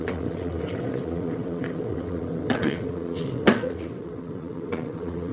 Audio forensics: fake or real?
fake